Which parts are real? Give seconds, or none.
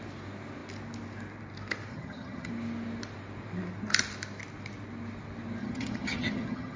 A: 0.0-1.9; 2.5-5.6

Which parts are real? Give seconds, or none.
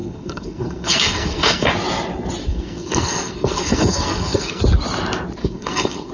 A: 1.7-2.5; 4.6-5.4